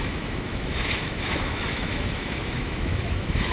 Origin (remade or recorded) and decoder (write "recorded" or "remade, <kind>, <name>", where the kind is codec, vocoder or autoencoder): remade, autoencoder, DAC-VAE